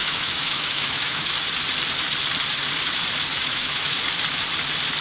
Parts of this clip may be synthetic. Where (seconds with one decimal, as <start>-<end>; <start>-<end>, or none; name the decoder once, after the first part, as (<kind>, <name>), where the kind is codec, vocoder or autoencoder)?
0.0-1.3 (autoencoder, DAC-VAE); 3.3-4.0